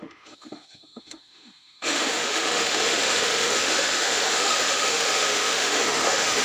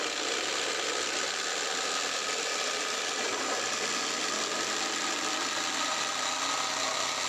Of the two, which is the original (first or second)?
second